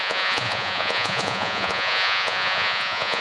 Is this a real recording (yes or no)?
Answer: no